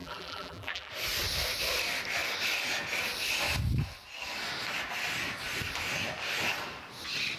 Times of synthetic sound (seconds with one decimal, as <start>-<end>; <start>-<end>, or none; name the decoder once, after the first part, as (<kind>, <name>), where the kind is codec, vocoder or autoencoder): 0.0-0.9 (vocoder, BigVGAN v2)